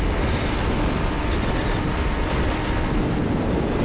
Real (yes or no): yes